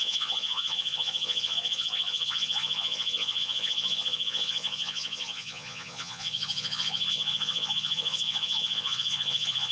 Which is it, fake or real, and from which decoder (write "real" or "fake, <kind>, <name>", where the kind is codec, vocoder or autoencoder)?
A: fake, vocoder, Vocos